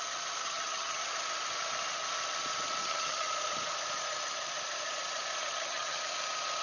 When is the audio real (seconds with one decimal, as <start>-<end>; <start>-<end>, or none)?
0.0-0.4; 1.0-2.8; 3.3-5.4; 6.0-6.6